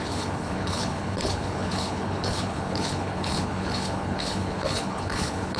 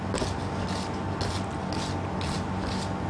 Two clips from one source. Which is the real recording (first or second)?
second